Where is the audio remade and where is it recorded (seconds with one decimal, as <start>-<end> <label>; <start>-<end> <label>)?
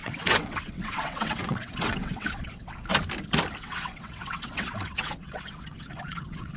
0.0-2.9 remade; 2.9-3.6 recorded; 3.6-6.6 remade